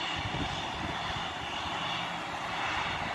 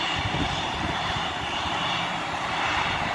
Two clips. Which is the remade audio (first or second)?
second